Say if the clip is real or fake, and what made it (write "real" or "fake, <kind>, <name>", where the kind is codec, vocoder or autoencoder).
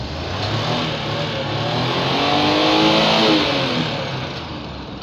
real